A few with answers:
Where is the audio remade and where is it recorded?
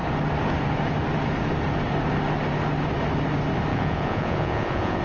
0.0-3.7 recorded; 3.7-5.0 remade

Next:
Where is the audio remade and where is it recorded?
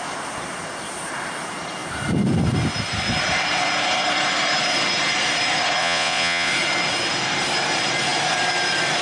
0.0-5.8 recorded; 5.8-6.5 remade; 6.5-9.0 recorded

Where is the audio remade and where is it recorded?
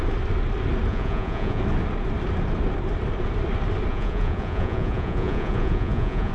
0.0-0.9 recorded; 0.9-1.6 remade; 1.6-3.9 recorded; 3.9-6.3 remade